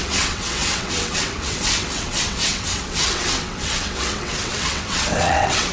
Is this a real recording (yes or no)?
no